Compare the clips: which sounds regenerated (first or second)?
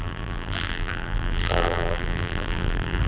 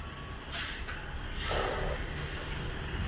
first